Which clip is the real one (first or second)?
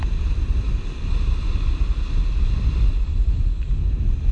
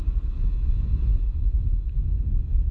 first